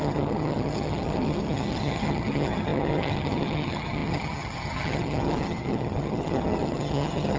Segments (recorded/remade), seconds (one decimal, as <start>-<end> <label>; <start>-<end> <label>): 0.0-7.4 remade